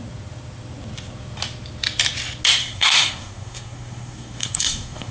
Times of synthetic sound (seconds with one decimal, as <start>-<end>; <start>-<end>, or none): 2.6-5.1